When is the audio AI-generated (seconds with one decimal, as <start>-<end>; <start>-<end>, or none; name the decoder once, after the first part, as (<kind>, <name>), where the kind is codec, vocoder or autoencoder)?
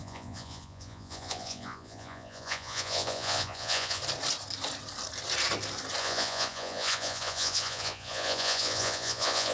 0.0-4.0 (vocoder, Vocos); 6.0-9.5